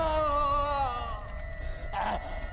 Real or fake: real